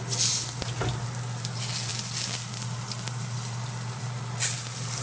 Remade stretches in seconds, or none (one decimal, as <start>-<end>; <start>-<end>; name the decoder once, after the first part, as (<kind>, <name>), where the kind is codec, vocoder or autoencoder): none